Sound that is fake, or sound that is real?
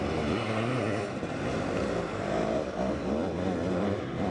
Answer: real